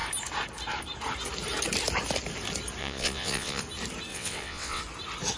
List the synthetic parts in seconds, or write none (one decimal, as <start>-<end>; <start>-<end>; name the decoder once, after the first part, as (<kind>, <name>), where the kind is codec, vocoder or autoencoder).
2.8-3.6 (vocoder, WaveNeXt); 4.1-4.8